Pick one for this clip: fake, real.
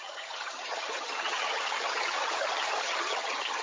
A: fake